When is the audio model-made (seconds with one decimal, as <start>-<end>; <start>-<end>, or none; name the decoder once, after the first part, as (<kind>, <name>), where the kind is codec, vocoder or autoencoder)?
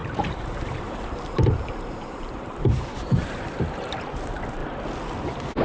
0.0-3.4 (vocoder, BigVGAN v2)